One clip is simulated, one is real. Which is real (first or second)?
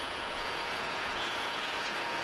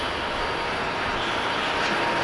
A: second